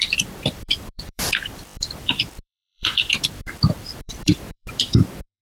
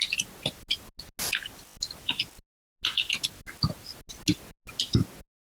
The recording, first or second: second